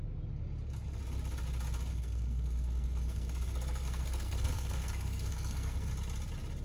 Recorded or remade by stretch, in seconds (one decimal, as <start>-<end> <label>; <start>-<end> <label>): 0.0-1.9 recorded; 1.9-5.9 remade; 5.9-6.6 recorded